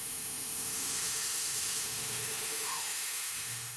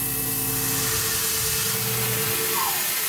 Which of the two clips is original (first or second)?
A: second